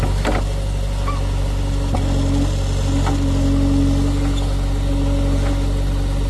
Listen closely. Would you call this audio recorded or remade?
recorded